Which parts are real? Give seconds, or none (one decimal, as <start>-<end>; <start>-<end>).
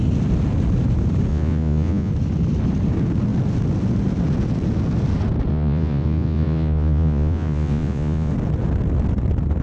0.0-1.3; 2.1-5.5; 8.3-9.6